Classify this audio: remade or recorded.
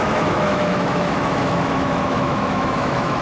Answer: remade